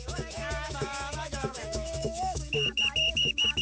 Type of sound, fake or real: fake